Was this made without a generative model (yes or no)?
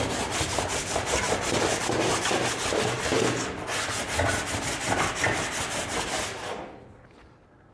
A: yes